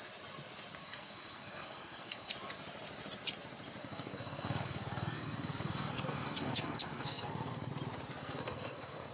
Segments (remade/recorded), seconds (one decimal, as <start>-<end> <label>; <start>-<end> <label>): 0.0-0.8 recorded; 0.8-2.3 remade; 2.3-3.8 recorded; 3.8-7.7 remade; 7.7-8.2 recorded; 8.2-9.1 remade